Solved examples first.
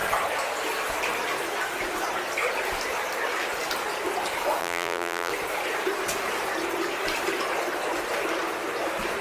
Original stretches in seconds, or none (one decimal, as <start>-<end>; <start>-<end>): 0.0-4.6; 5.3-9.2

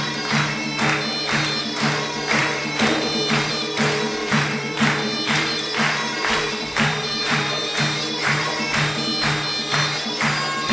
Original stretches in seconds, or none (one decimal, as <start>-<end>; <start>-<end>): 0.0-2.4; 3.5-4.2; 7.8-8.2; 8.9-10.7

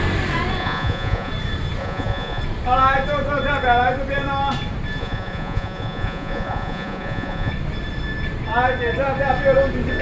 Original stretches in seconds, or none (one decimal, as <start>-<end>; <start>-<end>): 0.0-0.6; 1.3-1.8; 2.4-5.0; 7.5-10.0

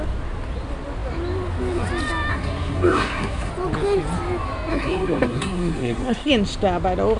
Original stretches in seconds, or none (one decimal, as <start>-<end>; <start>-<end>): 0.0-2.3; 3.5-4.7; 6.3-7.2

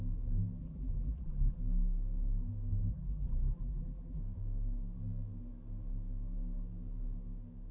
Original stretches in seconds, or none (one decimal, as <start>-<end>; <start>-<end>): 0.0-0.6; 1.6-2.9; 4.2-7.7

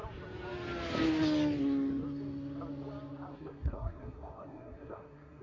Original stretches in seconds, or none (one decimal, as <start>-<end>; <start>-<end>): 0.0-3.3

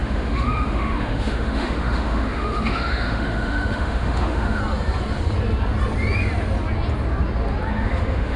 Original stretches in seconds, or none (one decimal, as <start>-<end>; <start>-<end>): 4.6-7.7